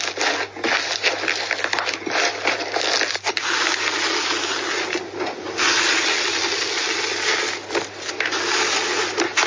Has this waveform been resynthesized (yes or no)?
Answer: no